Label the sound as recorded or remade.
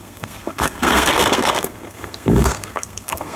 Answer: remade